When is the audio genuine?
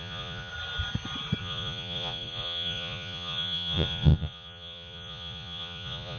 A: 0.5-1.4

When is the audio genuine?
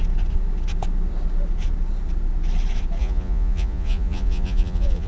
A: 0.0-3.0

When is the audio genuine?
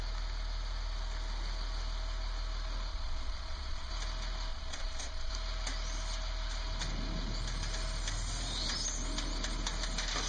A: 0.0-2.9; 3.9-4.5; 5.3-10.3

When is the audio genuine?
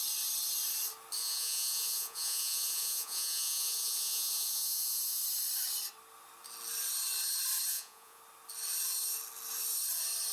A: 0.0-1.2; 5.2-7.7; 8.2-10.3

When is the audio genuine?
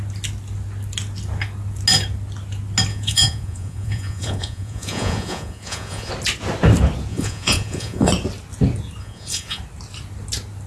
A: 0.0-2.9; 6.1-7.1; 8.1-9.0; 9.6-10.7